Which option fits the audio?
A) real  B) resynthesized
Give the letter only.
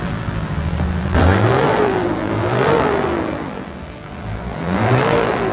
B